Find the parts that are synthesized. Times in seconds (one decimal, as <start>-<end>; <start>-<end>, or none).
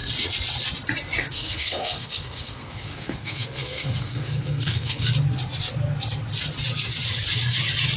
1.2-5.1